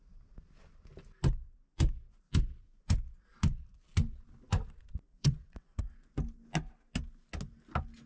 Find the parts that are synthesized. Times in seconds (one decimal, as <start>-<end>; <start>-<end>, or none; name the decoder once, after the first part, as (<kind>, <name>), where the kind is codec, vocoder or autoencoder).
5.1-5.8 (vocoder, WaveNeXt)